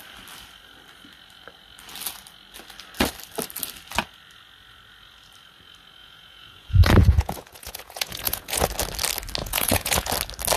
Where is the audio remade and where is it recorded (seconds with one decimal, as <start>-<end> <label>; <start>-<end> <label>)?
0.0-6.0 recorded; 6.0-8.7 remade; 8.7-9.4 recorded; 9.4-10.1 remade; 10.1-10.6 recorded